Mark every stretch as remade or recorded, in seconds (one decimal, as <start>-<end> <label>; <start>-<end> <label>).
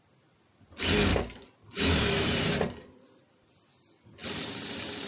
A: 0.0-1.1 recorded; 1.1-3.5 remade; 3.5-4.2 recorded; 4.2-5.1 remade